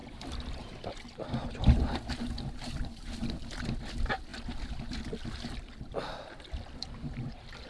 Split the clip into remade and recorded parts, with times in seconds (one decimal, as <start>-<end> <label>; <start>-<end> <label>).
0.0-7.7 recorded